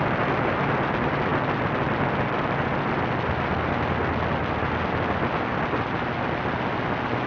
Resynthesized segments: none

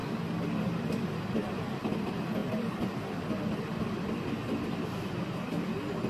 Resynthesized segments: 0.8-6.1 (vocoder, BigVGAN v2)

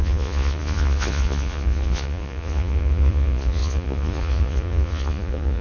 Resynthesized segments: 0.0-5.6 (vocoder, Vocos)

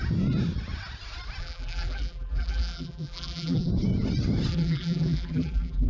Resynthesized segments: 1.4-3.7 (vocoder, BigVGAN v2); 4.5-5.9

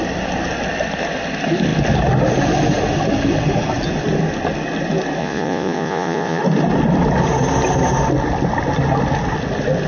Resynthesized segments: 5.2-6.4 (vocoder, Vocos)

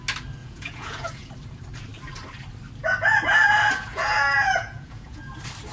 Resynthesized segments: 0.4-1.3 (vocoder, Vocos); 3.9-5.3

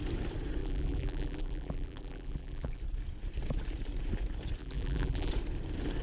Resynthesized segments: 0.6-2.8 (vocoder, BigVGAN v2); 4.6-5.3